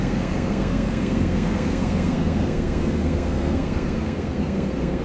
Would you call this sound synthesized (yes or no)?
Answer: yes